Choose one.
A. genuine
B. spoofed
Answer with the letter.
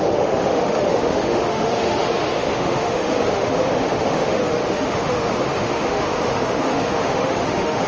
B